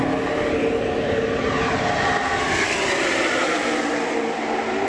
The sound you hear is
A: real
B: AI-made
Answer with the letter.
A